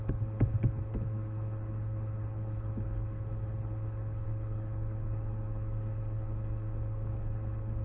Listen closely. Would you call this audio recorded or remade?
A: remade